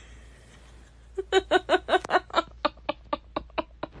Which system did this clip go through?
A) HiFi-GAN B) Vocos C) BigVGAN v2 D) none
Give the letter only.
D